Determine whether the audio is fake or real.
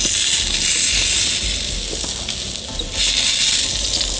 real